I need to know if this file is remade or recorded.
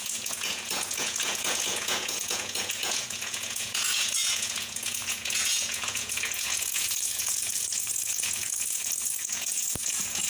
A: remade